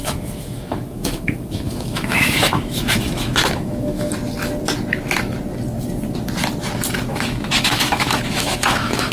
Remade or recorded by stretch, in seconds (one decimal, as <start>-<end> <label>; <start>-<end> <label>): 0.0-4.1 remade; 4.1-7.1 recorded; 7.1-9.1 remade